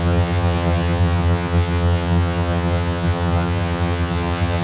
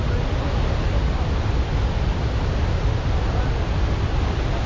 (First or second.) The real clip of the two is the second